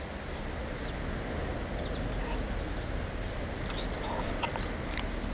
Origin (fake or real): real